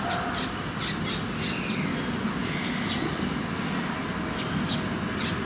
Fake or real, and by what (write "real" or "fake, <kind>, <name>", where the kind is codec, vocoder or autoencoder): real